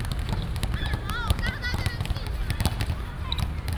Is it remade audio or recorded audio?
recorded